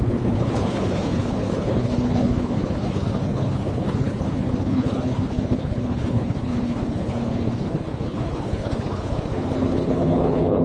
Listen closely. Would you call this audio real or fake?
fake